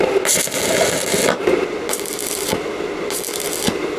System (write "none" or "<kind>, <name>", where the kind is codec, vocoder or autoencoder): none